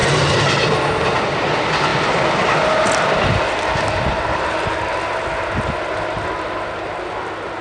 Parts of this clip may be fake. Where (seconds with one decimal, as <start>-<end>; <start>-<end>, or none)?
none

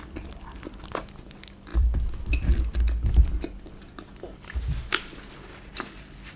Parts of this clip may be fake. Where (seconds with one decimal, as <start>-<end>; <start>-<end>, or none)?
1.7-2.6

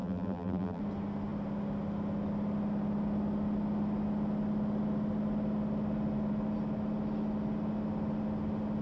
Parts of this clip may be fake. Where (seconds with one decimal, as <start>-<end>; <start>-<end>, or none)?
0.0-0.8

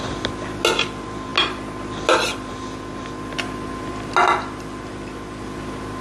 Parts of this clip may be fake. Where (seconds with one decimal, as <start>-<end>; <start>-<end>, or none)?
none

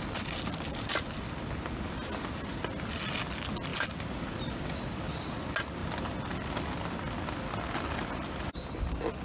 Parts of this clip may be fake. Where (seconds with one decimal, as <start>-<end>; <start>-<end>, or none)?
3.7-5.3

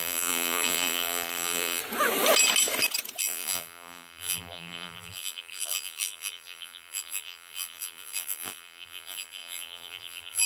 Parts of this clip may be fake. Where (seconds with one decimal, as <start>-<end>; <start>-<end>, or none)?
0.0-1.8; 3.2-10.5